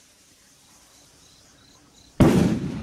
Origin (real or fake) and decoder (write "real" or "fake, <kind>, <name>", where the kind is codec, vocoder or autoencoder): fake, vocoder, BigVGAN v2